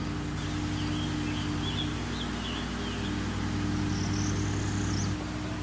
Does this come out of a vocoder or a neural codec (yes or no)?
no